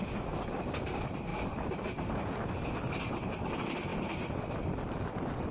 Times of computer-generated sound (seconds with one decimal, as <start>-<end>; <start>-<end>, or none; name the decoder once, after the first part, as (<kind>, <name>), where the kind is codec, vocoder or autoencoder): 1.3-3.5 (vocoder, BigVGAN v2)